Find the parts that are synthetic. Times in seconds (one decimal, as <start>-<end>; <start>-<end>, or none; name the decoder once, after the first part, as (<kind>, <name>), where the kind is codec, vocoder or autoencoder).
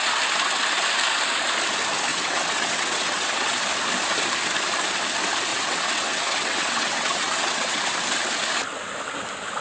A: 2.1-3.6 (vocoder, WaveNeXt); 5.5-7.8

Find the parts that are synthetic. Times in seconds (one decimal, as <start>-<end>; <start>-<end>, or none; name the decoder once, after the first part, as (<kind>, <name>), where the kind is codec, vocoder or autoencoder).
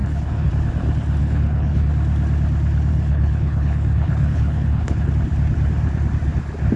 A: 0.0-0.5 (codec, HILCodec); 1.2-1.9; 2.9-5.1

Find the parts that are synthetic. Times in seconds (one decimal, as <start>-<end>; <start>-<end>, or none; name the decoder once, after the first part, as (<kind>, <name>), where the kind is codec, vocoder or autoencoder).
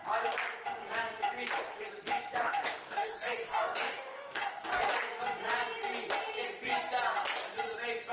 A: 2.4-4.9 (codec, DAC)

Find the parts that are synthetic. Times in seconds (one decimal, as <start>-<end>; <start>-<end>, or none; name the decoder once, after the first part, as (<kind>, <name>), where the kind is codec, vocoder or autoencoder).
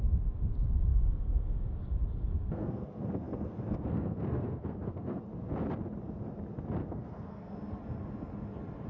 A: 0.9-1.8 (codec, SNAC); 2.3-5.2; 6.8-7.5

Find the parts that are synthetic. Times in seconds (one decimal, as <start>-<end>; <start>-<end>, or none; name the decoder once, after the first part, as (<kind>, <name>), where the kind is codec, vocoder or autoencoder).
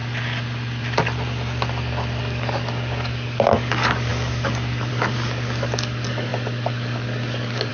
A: 2.2-7.7 (codec, DAC)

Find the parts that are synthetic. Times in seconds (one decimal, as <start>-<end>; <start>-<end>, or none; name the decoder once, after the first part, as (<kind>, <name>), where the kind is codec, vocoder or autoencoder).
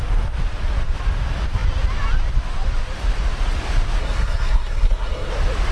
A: 4.0-5.3 (codec, SNAC)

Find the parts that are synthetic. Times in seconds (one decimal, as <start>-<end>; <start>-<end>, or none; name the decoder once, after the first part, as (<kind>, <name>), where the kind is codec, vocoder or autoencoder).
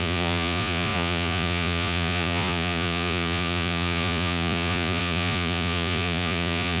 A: 0.0-6.8 (vocoder, Vocos)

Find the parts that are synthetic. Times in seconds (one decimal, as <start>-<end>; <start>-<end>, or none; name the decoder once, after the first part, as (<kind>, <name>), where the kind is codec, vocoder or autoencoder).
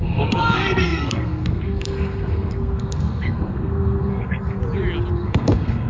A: 0.0-4.6 (codec, SNAC); 5.1-5.9